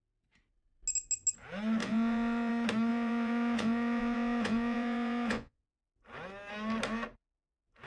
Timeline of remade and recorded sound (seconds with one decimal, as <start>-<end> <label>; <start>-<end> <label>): 0.0-1.8 recorded; 1.8-2.5 remade; 2.5-2.9 recorded; 2.9-5.8 remade; 5.8-7.9 recorded